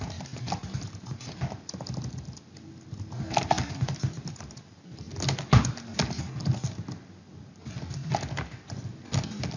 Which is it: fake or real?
real